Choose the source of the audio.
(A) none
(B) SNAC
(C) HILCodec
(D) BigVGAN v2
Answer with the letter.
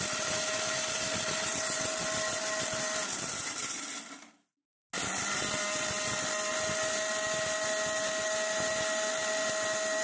A